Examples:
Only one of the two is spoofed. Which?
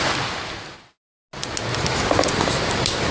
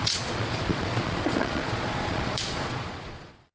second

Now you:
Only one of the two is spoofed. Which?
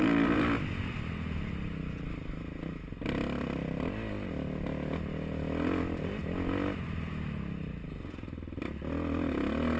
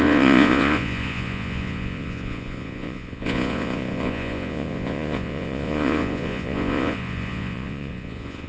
second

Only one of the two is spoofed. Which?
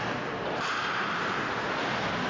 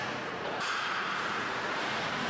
second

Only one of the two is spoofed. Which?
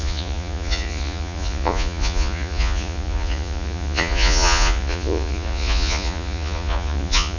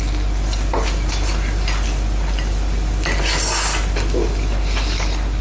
first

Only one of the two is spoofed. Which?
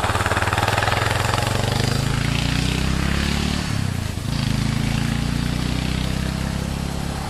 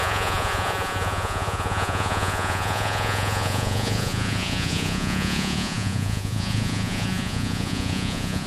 second